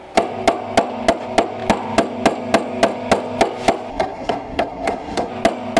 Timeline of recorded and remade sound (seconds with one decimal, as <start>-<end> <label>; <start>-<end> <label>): 0.0-3.9 recorded; 3.9-5.3 remade; 5.3-5.8 recorded